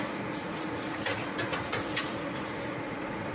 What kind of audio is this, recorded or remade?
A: remade